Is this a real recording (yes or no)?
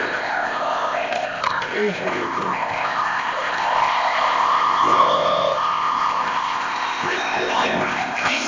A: no